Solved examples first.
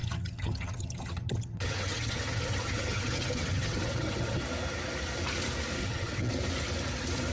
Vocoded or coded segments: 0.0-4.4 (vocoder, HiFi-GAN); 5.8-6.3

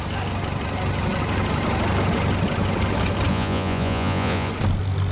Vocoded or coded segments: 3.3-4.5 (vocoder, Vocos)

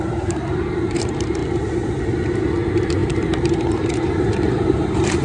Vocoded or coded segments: 0.0-1.4 (vocoder, BigVGAN v2); 2.0-5.2

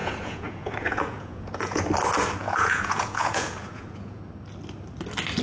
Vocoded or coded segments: 0.0-1.8 (vocoder, Vocos); 2.4-4.2

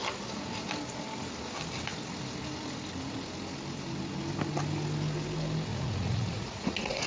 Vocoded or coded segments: 5.7-7.1 (vocoder, Vocos)

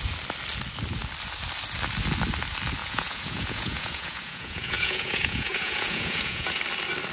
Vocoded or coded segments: 2.8-6.6 (vocoder, Vocos)